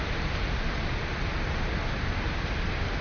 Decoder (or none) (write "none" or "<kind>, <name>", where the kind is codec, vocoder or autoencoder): none